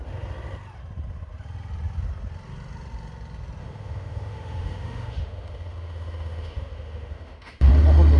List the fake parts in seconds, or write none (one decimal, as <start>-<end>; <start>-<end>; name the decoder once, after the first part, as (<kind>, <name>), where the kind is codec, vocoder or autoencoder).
3.6-7.7 (autoencoder, DAC-VAE)

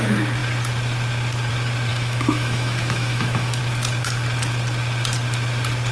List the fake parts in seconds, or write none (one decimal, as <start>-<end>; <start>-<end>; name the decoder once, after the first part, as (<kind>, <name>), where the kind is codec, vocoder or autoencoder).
1.9-3.6 (autoencoder, DAC-VAE)